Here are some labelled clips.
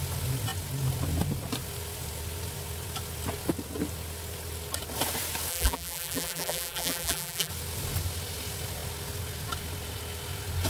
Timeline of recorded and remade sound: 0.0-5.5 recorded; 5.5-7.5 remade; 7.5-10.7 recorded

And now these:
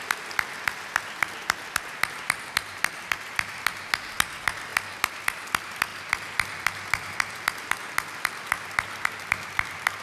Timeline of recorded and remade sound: 0.0-10.0 recorded

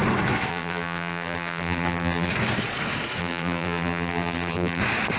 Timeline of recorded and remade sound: 0.0-0.5 recorded; 0.5-2.3 remade; 2.3-3.2 recorded; 3.2-4.8 remade; 4.8-5.2 recorded

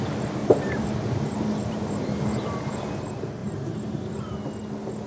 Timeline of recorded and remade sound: 0.0-0.4 recorded; 0.4-2.8 remade; 2.8-3.4 recorded; 3.4-4.3 remade; 4.3-5.1 recorded

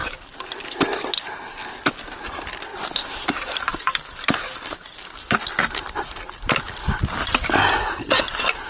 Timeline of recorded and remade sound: 0.0-2.7 recorded; 2.7-4.4 remade; 4.4-8.7 recorded

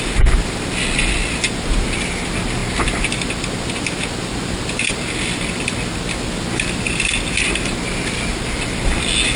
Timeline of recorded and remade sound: 0.0-9.4 recorded